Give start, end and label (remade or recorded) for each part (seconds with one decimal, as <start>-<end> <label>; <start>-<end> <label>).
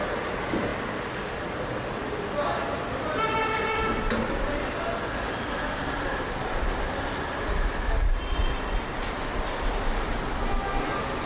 0.0-11.3 recorded